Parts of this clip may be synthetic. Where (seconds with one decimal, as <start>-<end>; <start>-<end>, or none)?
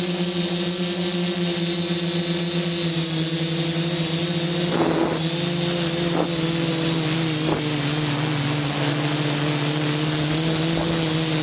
none